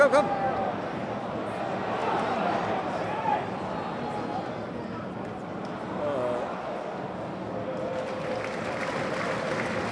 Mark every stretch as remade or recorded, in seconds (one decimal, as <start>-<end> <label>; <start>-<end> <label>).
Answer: 0.0-2.0 recorded; 2.0-3.6 remade; 3.6-9.9 recorded